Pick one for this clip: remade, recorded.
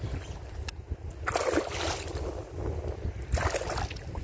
recorded